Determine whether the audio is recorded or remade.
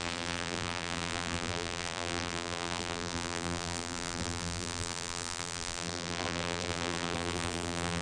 remade